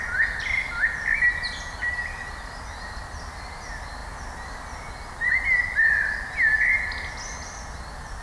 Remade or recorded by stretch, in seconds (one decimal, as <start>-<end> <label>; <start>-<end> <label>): 0.0-8.2 recorded